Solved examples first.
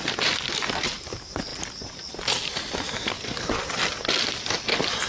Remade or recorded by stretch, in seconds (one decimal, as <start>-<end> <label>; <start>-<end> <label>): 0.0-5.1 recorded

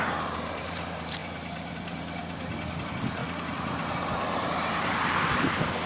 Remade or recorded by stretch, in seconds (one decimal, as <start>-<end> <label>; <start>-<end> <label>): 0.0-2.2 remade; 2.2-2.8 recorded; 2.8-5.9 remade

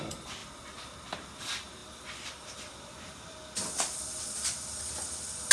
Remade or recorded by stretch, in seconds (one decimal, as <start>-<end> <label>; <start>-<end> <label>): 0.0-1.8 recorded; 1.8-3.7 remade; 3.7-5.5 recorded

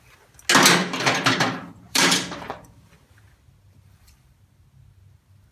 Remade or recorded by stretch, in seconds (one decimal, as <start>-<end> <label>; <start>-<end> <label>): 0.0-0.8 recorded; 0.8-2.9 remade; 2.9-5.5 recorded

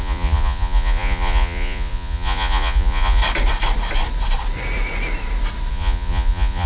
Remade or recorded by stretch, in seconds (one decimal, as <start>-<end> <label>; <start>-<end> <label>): 0.0-3.2 remade; 3.2-5.7 recorded; 5.7-6.7 remade

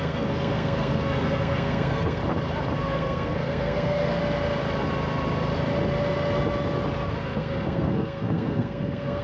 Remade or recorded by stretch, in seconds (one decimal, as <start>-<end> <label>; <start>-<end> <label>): 0.0-2.2 remade; 2.2-2.8 recorded; 2.8-4.2 remade; 4.2-7.1 recorded; 7.1-9.2 remade